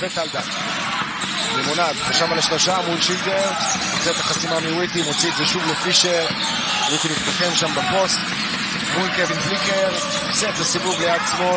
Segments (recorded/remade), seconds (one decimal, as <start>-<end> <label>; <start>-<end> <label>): 0.0-6.9 recorded; 6.9-7.4 remade; 7.4-11.6 recorded